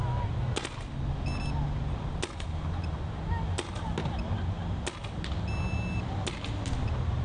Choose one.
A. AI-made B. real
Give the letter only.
B